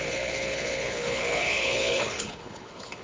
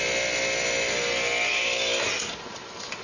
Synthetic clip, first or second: first